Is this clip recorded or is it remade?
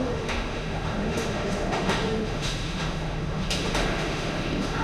remade